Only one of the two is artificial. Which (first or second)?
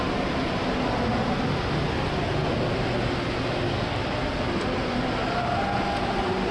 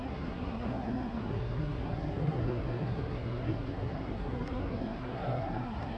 second